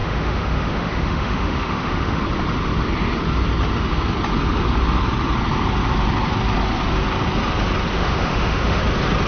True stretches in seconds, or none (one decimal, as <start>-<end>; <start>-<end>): 2.2-7.9; 8.8-9.3